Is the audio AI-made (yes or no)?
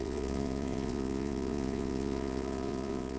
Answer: yes